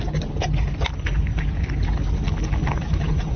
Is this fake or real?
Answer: real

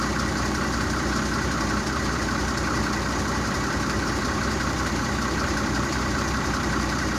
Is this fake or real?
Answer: fake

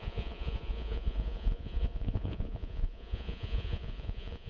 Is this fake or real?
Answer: fake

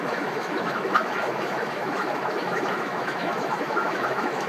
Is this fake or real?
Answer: fake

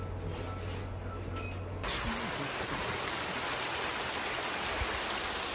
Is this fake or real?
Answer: real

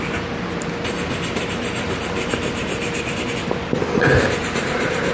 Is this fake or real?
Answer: fake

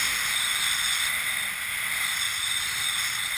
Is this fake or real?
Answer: real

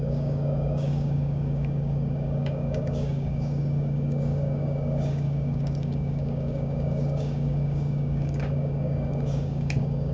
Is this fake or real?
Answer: fake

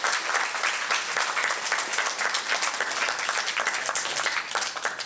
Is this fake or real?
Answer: real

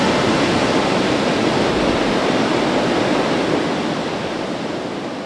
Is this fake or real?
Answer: real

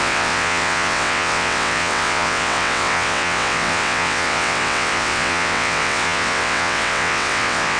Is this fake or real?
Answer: fake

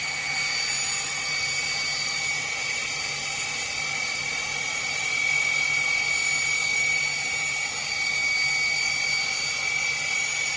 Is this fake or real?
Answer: real